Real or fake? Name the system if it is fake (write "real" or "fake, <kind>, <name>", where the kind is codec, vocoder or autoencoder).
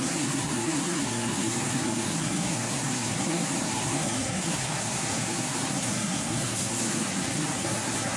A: fake, codec, SNAC